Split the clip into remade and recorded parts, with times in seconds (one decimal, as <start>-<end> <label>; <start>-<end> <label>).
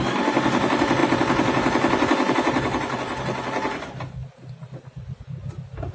0.0-5.9 recorded